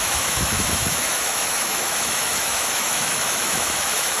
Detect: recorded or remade remade